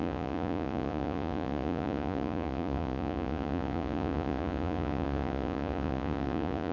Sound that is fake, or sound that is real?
fake